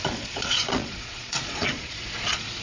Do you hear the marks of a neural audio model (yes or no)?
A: yes